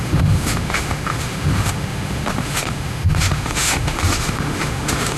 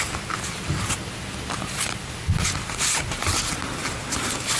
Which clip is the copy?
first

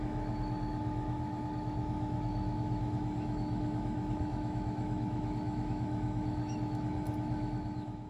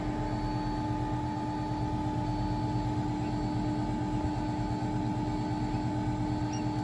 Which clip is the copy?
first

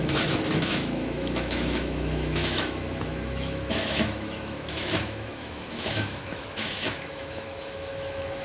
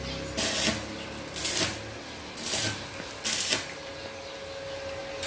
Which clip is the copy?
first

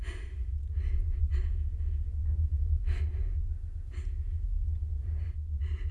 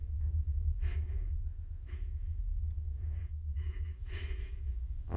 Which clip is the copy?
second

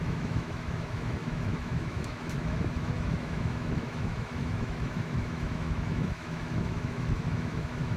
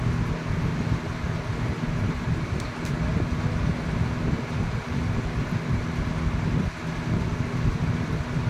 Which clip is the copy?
first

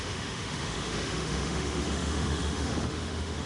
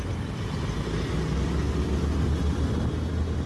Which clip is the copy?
first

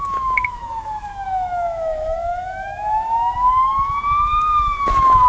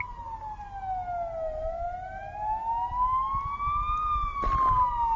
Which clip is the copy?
first